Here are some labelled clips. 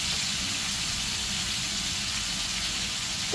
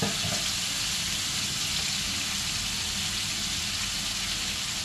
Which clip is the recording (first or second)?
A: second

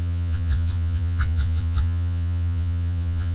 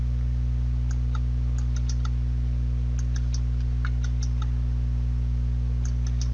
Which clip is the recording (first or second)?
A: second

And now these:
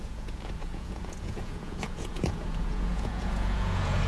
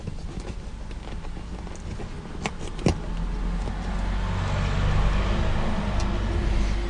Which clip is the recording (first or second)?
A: second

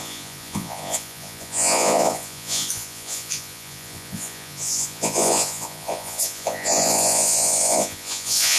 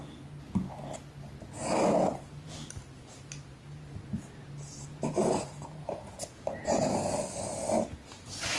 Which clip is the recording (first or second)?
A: second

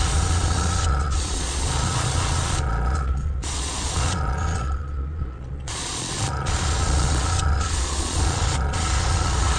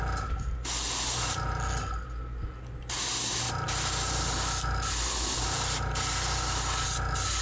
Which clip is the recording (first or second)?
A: second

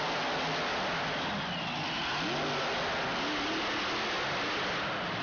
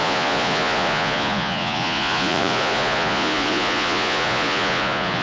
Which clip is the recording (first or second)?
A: first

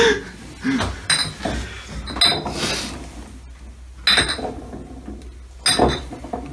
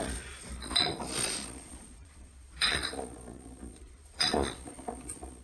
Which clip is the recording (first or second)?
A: first